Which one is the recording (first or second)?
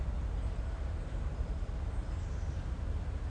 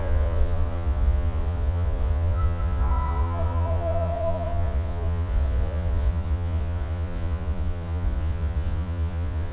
first